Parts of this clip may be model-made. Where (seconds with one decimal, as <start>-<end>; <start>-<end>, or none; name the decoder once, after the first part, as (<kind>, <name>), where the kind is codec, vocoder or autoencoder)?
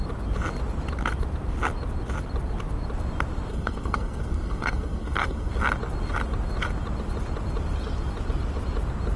3.5-5.5 (codec, SNAC)